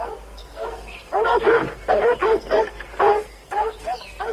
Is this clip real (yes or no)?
no